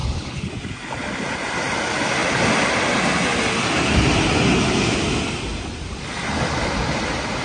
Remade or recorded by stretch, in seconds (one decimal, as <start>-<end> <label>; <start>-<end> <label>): 0.0-0.5 remade; 0.5-7.4 recorded